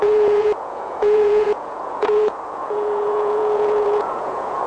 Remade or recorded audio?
remade